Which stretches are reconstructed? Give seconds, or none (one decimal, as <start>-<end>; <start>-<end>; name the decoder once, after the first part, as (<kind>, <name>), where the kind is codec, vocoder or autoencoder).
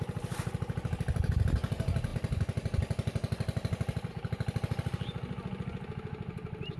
none